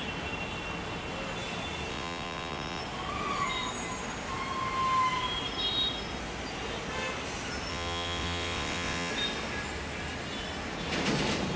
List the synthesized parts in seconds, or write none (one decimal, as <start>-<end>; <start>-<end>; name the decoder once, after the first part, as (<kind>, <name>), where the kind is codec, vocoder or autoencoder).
1.9-2.8 (vocoder, WaveNeXt); 7.7-9.1

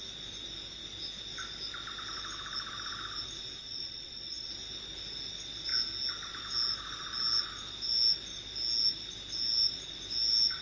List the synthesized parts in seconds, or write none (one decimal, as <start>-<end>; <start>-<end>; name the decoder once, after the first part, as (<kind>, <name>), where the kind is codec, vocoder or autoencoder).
3.6-4.5 (vocoder, WaveNeXt)

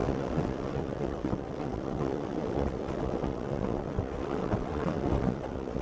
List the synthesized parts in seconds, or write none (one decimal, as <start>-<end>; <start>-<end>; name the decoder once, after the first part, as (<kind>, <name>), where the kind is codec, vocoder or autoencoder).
0.0-5.8 (vocoder, WaveNeXt)

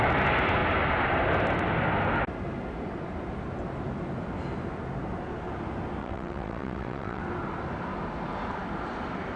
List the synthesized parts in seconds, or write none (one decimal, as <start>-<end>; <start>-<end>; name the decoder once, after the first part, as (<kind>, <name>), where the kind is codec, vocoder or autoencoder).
6.0-7.2 (vocoder, WaveNeXt)

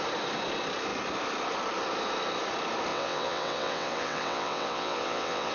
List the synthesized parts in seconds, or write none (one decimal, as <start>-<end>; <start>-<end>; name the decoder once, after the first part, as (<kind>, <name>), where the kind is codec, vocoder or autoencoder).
2.9-5.5 (vocoder, WaveNeXt)

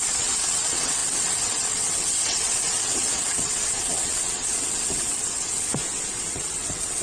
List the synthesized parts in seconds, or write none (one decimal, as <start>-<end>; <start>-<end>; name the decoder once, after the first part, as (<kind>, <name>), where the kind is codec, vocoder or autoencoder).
0.0-5.8 (vocoder, WaveNeXt); 6.3-7.0

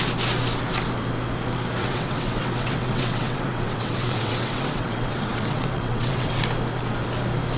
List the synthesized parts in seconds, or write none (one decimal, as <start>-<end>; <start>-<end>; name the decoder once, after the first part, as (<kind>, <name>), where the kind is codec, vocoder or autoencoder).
1.8-6.4 (vocoder, WaveNeXt)

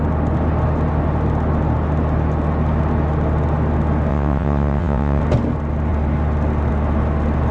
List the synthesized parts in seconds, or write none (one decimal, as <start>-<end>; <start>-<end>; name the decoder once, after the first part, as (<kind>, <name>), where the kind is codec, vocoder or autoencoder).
4.1-5.2 (vocoder, WaveNeXt)